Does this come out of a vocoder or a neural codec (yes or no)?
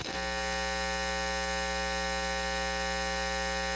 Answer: no